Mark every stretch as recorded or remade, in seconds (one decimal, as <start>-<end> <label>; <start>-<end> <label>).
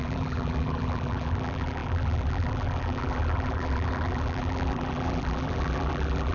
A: 0.0-6.3 remade